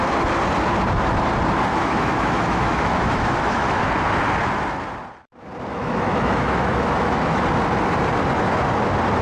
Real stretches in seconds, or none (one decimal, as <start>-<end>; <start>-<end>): 0.0-1.7; 3.8-5.7; 7.4-9.2